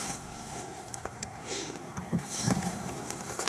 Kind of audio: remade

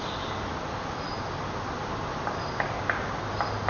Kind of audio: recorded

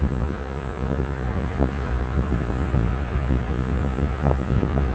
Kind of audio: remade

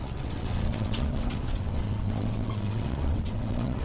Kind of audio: remade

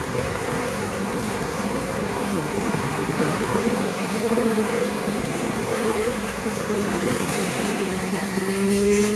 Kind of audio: remade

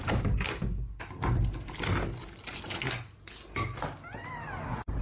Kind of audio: recorded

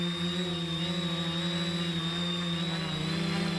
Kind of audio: recorded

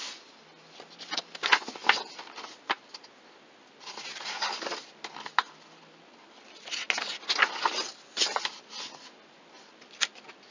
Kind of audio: recorded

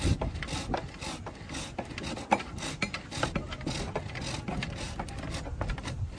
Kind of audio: recorded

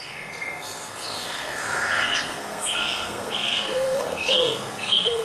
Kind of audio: remade